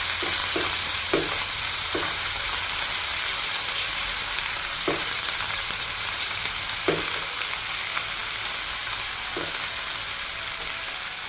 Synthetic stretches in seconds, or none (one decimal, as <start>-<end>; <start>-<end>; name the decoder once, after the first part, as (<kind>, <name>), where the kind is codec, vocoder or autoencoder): 0.4-2.6 (vocoder, BigVGAN v2); 4.0-6.8